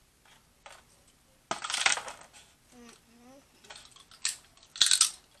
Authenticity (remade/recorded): recorded